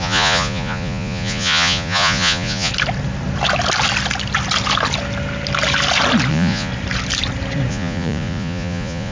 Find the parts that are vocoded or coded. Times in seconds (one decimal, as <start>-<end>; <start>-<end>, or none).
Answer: 0.0-2.7; 6.3-6.7; 7.7-9.1